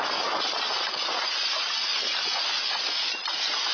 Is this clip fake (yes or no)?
yes